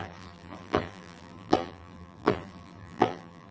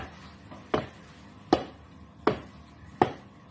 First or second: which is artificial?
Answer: first